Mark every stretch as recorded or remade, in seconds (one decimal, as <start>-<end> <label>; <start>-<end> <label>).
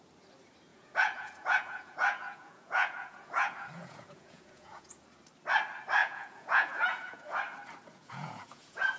0.0-0.7 recorded; 0.7-5.0 remade; 5.0-6.0 recorded; 6.0-7.4 remade; 7.4-8.0 recorded; 8.0-9.0 remade